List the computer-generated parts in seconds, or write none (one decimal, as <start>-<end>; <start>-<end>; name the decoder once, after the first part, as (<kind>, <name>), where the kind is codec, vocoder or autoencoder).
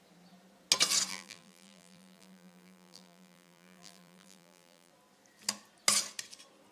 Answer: 1.1-4.9 (vocoder, BigVGAN v2)